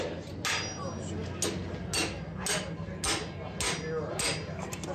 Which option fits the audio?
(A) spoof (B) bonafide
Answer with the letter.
B